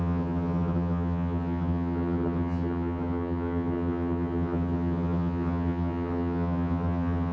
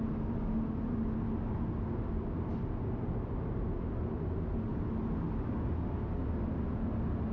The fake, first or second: first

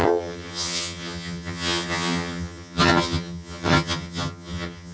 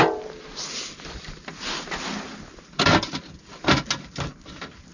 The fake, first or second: first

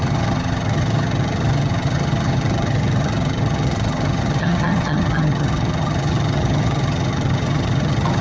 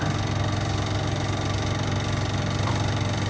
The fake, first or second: first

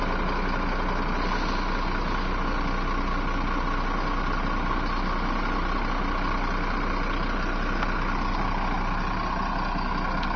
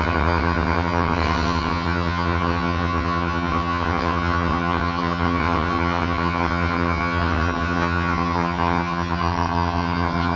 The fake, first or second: second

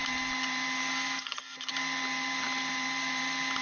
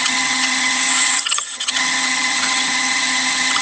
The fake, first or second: second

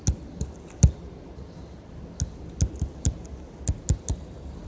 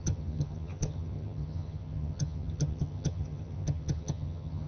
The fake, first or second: second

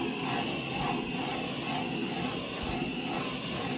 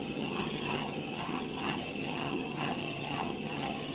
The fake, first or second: second